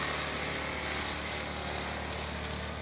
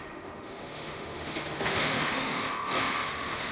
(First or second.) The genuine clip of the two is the first